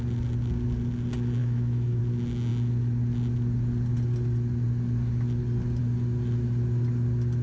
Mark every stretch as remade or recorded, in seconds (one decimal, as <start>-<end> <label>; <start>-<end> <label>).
0.0-1.4 recorded; 1.4-2.0 remade; 2.0-7.4 recorded